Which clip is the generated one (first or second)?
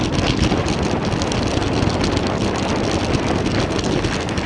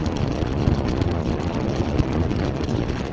second